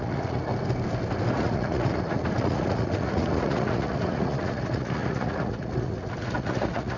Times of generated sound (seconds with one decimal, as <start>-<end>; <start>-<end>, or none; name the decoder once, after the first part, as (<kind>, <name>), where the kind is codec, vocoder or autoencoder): 0.0-0.5 (vocoder, Vocos); 1.3-7.0